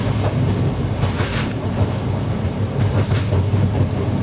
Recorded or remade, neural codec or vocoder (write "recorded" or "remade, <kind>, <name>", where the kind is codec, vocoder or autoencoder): recorded